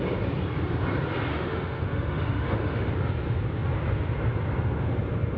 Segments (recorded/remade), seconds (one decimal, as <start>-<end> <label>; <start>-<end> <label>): 0.0-1.3 recorded; 1.3-2.9 remade; 2.9-5.4 recorded